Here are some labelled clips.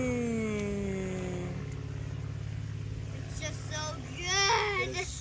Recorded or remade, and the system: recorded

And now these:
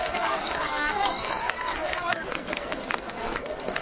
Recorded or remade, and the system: remade, codec, SNAC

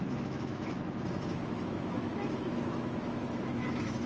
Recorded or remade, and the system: remade, autoencoder, DAC-VAE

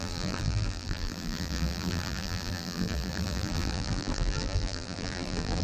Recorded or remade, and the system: remade, vocoder, BigVGAN v2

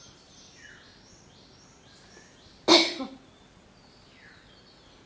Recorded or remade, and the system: recorded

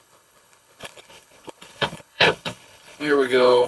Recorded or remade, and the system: remade, codec, HILCodec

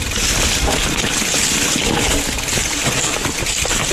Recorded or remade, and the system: recorded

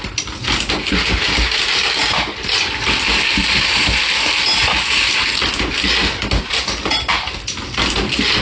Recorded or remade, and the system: recorded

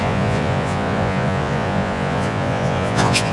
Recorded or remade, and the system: remade, vocoder, Vocos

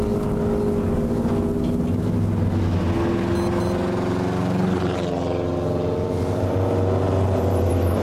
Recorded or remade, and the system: recorded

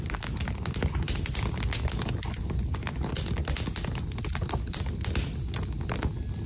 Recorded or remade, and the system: recorded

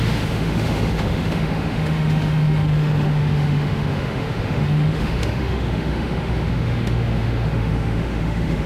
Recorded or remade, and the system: remade, autoencoder, DAC-VAE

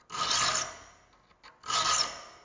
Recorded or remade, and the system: recorded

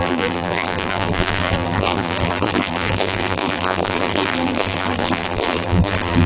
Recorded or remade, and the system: remade, vocoder, BigVGAN v2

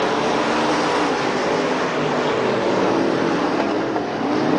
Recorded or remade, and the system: recorded